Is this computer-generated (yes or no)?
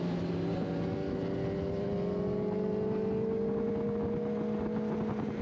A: no